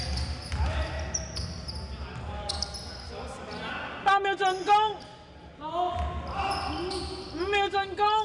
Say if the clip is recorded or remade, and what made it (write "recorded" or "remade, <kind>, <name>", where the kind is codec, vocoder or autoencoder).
recorded